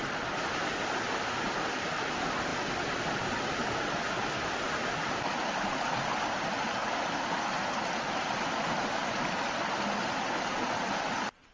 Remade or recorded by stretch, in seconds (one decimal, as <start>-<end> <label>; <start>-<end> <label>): 0.0-11.5 recorded